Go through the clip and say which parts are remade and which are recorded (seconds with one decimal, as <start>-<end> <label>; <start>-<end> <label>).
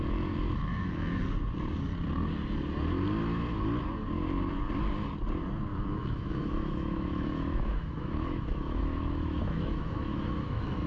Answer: 0.0-0.7 recorded; 0.7-1.2 remade; 1.2-5.7 recorded; 5.7-10.9 remade